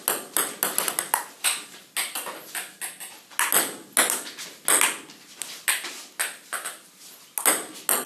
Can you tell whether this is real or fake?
real